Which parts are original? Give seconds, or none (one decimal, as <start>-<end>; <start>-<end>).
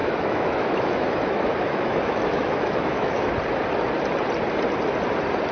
3.3-5.5